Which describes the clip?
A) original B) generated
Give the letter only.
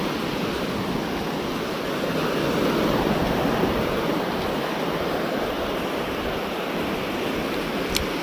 A